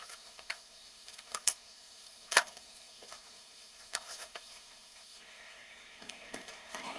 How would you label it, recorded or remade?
remade